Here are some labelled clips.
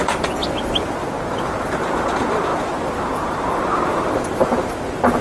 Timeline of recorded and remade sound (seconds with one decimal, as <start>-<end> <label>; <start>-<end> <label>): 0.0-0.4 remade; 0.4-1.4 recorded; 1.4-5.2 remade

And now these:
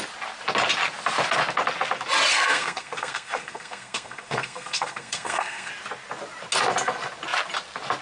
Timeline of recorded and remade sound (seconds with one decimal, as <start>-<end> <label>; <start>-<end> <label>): 0.0-2.3 recorded; 2.3-5.7 remade; 5.7-8.0 recorded

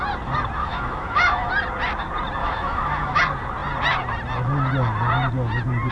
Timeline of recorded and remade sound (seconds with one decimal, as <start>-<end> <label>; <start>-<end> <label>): 0.0-0.6 recorded; 0.6-1.5 remade; 1.5-2.4 recorded; 2.4-3.2 remade; 3.2-5.9 recorded

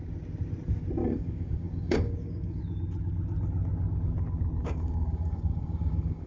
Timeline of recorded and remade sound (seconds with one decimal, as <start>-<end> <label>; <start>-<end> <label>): 0.0-1.0 recorded; 1.0-2.6 remade; 2.6-4.6 recorded; 4.6-6.3 remade

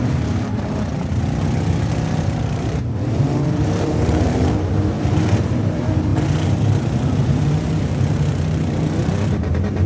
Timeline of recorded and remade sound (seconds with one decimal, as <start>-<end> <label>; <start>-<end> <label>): 0.0-0.9 remade; 0.9-2.2 recorded; 2.2-9.9 remade

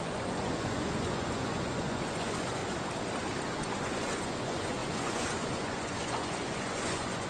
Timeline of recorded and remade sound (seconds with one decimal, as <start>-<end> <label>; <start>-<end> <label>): 0.0-2.6 remade; 2.6-3.5 recorded; 3.5-7.3 remade